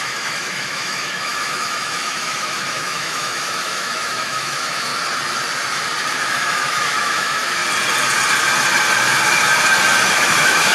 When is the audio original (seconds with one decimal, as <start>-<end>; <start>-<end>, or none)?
4.9-6.3; 7.6-10.1